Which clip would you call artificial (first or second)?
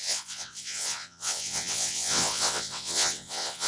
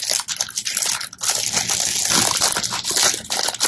first